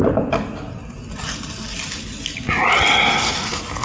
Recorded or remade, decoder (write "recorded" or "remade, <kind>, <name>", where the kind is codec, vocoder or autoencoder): recorded